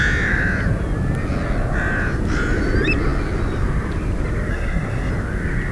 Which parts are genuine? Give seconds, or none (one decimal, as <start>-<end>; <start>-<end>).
0.0-4.5; 5.1-5.7